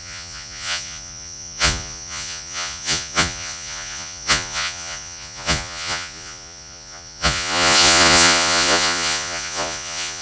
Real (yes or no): no